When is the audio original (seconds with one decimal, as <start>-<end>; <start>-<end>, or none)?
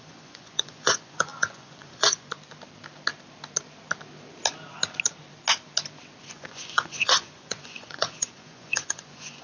2.3-6.2